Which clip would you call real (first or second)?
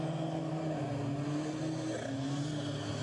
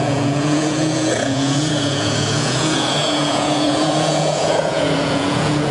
first